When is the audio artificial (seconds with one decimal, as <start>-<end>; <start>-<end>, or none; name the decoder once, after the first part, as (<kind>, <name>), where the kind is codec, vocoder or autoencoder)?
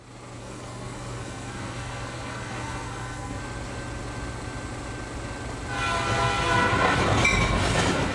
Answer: 0.4-3.4 (codec, SNAC)